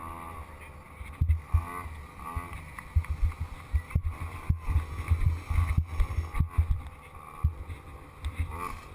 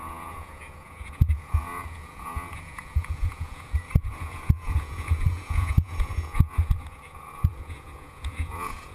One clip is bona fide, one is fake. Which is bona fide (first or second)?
first